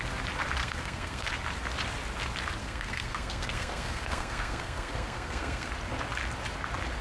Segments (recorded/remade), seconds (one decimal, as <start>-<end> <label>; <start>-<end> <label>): 0.0-0.6 recorded; 0.6-1.3 remade; 1.3-2.6 recorded; 2.6-5.7 remade; 5.7-7.0 recorded